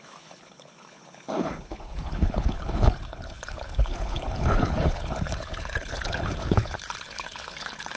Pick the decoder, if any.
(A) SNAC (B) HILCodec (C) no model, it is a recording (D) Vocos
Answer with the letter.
B